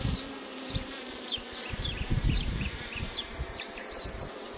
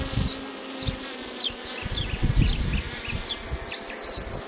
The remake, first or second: first